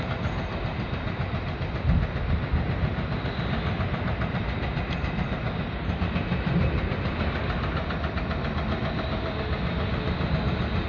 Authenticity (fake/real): real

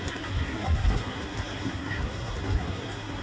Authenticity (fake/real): fake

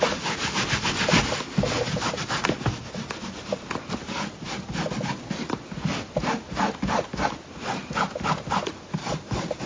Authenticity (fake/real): real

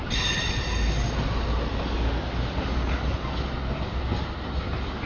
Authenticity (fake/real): real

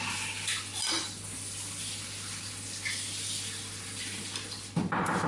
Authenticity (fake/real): real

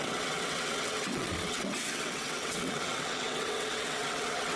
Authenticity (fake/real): fake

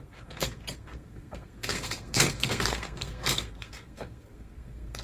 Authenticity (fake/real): fake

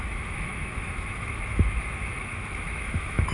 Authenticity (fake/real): fake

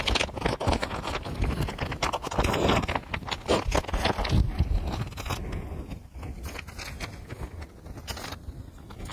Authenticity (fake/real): real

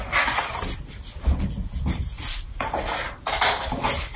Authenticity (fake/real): real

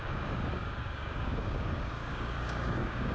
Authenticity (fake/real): fake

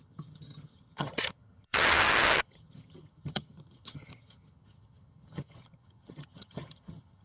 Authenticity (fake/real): fake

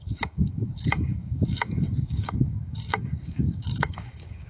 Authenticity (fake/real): fake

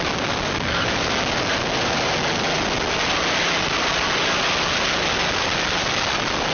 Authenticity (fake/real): real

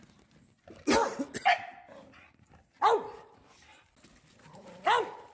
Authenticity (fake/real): real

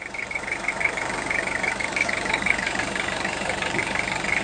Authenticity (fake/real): fake